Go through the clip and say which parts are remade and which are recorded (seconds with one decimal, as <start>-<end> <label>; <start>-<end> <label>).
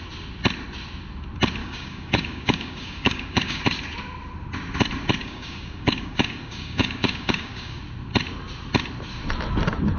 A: 0.0-1.6 recorded; 1.6-3.6 remade; 3.6-5.2 recorded; 5.2-7.8 remade; 7.8-10.0 recorded